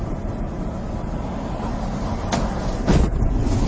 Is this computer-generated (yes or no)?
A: no